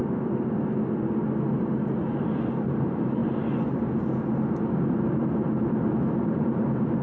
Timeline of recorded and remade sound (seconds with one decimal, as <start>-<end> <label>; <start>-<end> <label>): 0.0-2.2 recorded; 2.2-3.2 remade; 3.2-5.0 recorded; 5.0-5.4 remade; 5.4-6.2 recorded; 6.2-7.0 remade